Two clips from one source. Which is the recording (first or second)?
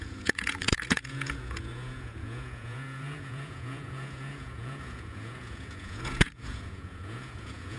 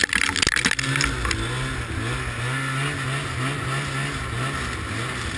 second